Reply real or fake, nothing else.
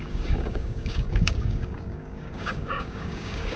fake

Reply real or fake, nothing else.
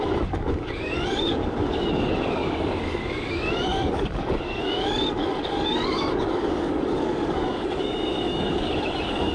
fake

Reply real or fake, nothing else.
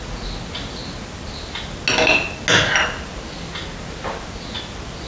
real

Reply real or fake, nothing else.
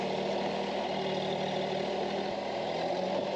real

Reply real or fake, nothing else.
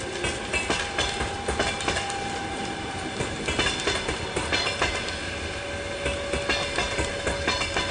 real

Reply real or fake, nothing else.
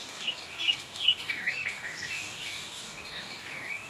fake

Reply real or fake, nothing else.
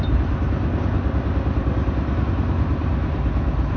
real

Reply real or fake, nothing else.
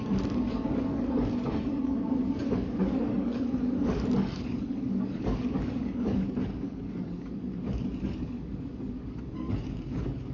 fake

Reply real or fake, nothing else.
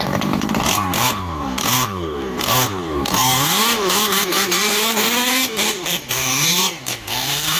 fake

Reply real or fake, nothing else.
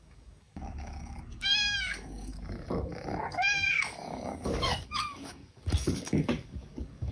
fake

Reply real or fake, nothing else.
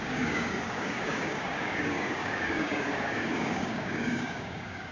fake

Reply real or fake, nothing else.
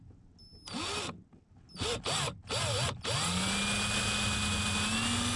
real